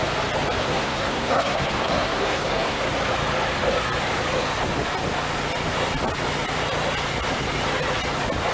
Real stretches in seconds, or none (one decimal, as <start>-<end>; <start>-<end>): 0.0-0.6; 2.8-8.5

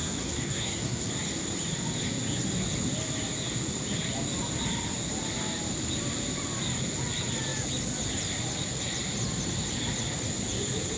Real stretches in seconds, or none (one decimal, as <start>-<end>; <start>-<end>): 1.1-11.0

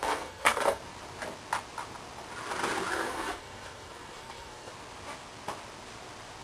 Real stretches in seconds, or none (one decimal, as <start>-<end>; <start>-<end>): 0.8-2.9; 4.7-6.4

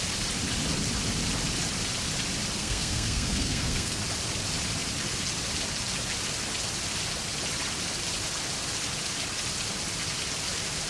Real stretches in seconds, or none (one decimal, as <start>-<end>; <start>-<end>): 0.0-2.6; 4.0-10.9